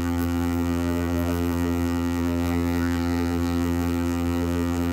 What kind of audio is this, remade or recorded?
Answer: remade